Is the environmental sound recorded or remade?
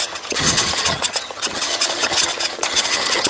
remade